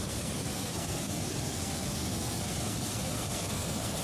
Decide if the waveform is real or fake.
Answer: fake